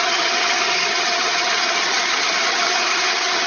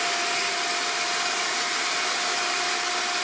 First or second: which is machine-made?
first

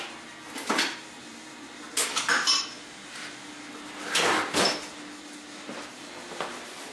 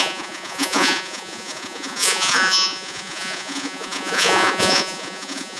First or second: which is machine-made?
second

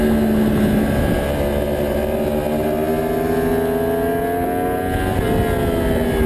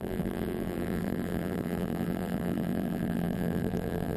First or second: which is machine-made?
second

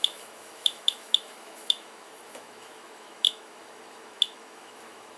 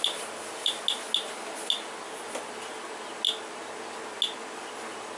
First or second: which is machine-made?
first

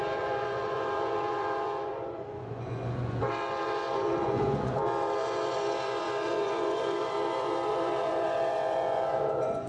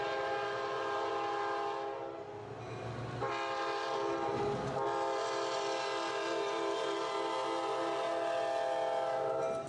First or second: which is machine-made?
first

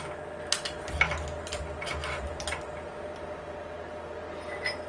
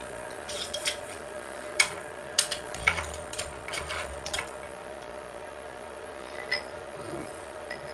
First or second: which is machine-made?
second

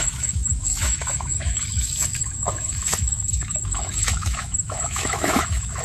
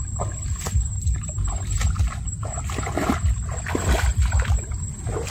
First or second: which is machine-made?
first